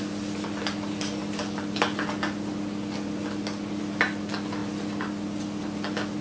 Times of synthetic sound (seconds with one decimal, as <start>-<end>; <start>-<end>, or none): none